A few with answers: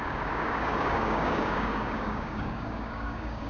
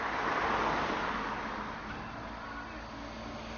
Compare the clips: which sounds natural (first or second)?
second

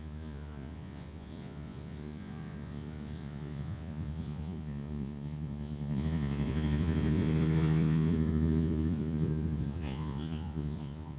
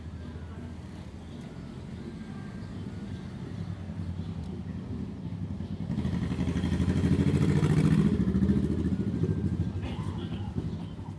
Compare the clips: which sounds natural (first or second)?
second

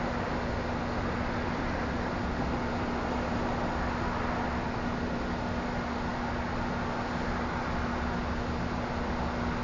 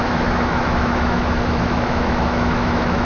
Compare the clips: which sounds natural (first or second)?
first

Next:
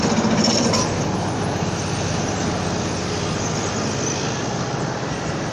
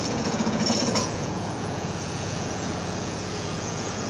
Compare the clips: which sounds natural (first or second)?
first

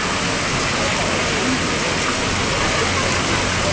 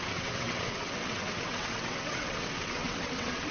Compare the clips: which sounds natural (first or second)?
first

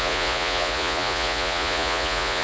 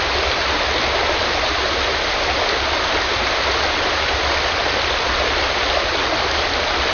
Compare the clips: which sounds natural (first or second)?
second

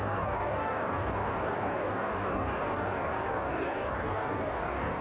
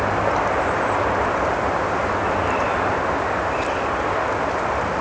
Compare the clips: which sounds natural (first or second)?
second